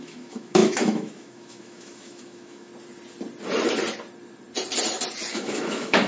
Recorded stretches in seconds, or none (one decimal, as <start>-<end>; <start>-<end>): 2.7-5.3